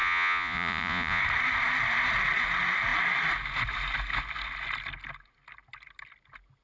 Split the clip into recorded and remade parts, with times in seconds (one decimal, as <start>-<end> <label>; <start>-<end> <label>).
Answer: 0.0-1.2 remade; 1.2-6.6 recorded